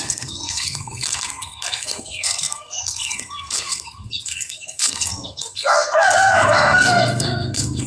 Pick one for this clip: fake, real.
fake